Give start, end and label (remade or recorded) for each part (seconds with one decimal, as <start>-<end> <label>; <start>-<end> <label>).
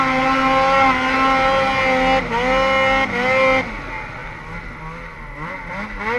0.0-6.2 recorded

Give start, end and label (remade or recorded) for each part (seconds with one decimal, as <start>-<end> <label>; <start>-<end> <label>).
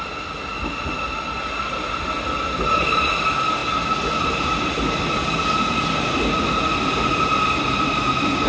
0.0-8.5 recorded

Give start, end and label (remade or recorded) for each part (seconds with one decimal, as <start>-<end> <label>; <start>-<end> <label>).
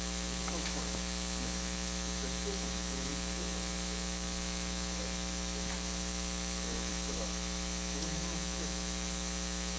0.0-9.8 remade